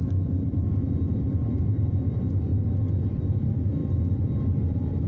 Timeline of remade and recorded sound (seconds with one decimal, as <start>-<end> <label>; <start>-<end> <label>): 0.0-2.5 remade; 2.5-3.1 recorded; 3.1-5.1 remade